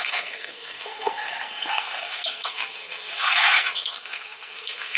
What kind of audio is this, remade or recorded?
remade